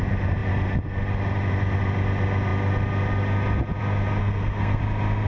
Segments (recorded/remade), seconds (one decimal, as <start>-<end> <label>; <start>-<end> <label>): 0.0-4.2 recorded; 4.2-4.8 remade; 4.8-5.3 recorded